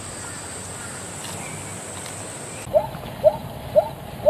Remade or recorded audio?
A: recorded